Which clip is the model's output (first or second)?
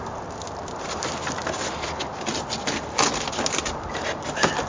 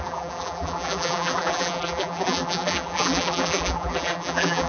second